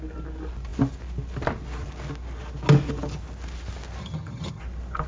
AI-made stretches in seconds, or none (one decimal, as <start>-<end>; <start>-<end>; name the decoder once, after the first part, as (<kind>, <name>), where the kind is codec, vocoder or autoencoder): 4.0-4.6 (vocoder, HiFi-GAN)